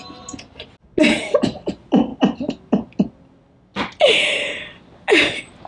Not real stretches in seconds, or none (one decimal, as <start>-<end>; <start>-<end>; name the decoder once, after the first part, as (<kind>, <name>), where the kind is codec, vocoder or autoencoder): none